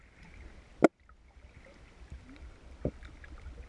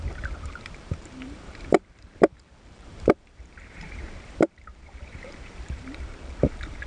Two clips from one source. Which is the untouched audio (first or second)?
first